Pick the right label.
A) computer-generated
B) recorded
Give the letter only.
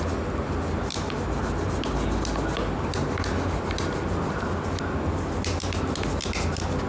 B